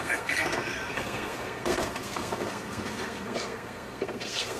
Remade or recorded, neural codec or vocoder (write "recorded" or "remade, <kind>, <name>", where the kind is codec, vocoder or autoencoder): remade, codec, SNAC